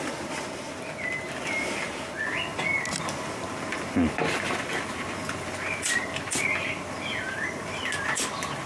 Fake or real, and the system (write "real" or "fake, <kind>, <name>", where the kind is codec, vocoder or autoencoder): real